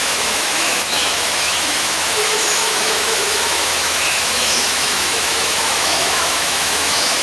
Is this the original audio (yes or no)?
no